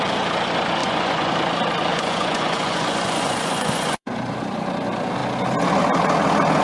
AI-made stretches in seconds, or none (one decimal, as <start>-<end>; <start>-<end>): 0.8-1.3; 1.9-4.1